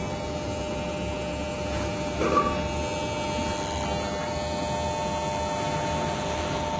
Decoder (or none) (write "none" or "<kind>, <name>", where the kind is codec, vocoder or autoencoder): none